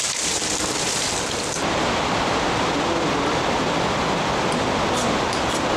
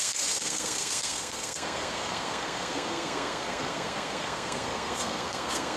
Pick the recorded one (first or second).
first